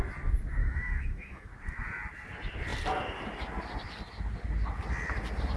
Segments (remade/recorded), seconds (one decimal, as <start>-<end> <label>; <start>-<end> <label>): 0.0-0.6 recorded; 0.6-1.5 remade; 1.5-5.6 recorded

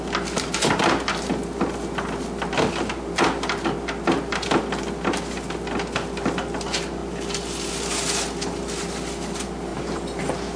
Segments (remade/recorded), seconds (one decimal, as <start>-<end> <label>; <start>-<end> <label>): 0.0-10.6 recorded

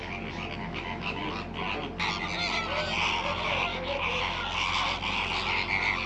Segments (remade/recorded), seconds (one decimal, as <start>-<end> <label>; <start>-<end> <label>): 0.0-0.6 recorded; 0.6-1.2 remade; 1.2-3.7 recorded; 3.7-4.2 remade; 4.2-6.1 recorded

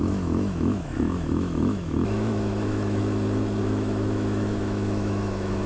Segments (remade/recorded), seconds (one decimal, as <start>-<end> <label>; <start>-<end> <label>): 0.0-3.0 remade; 3.0-3.6 recorded; 3.6-5.7 remade

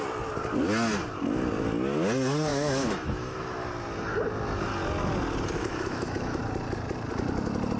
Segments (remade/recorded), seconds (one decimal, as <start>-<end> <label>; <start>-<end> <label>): 0.0-2.5 recorded; 2.5-3.7 remade; 3.7-5.6 recorded; 5.6-6.4 remade; 6.4-7.8 recorded